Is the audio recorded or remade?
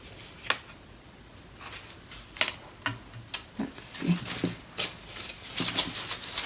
recorded